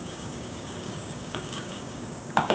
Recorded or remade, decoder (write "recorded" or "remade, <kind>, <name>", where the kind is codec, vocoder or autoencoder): remade, codec, DAC